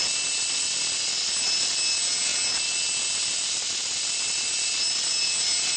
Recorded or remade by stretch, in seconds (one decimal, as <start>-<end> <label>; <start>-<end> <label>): 0.0-5.8 recorded